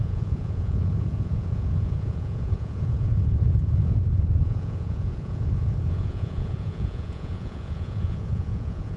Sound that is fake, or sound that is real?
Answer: fake